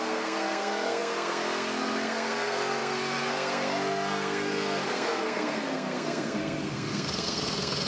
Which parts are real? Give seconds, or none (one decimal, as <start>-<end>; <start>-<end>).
none